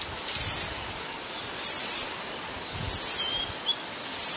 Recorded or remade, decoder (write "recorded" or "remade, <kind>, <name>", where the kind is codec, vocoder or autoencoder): recorded